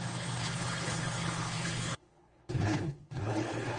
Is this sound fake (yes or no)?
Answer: yes